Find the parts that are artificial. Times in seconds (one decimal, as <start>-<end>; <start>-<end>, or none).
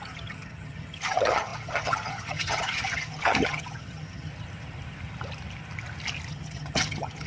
0.0-4.3; 6.3-7.3